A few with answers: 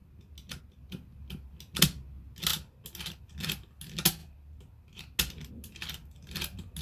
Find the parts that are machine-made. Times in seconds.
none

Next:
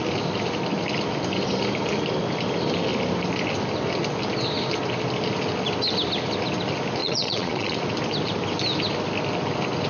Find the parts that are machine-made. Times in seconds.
7.0-7.8 (vocoder, Vocos)

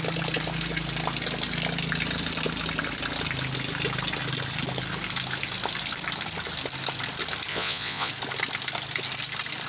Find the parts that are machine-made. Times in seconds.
7.5-8.1 (vocoder, Vocos)

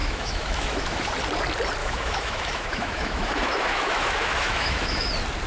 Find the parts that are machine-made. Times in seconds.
0.0-1.1 (autoencoder, DAC-VAE); 1.8-5.1